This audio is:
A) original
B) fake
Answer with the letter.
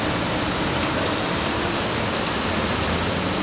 A